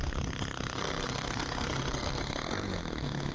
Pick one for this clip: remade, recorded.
remade